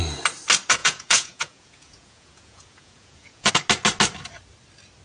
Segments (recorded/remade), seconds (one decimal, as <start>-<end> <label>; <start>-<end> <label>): 0.0-0.8 recorded; 0.8-3.5 remade; 3.5-5.0 recorded

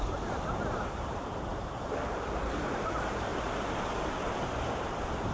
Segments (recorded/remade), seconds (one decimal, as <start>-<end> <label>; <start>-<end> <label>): 0.0-3.3 remade; 3.3-4.8 recorded; 4.8-5.3 remade

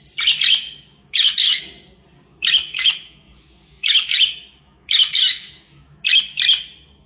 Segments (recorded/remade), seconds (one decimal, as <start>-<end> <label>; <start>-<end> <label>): 0.0-0.9 recorded; 0.9-1.6 remade; 1.6-2.3 recorded; 2.3-6.2 remade; 6.2-7.1 recorded

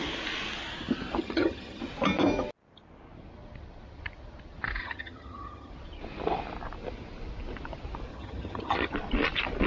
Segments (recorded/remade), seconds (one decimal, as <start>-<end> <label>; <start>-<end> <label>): 0.0-1.2 recorded; 1.2-1.8 remade; 1.8-4.8 recorded; 4.8-5.7 remade; 5.7-8.1 recorded; 8.1-8.9 remade; 8.9-9.7 recorded